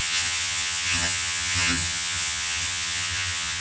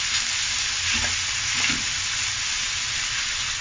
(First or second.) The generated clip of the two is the first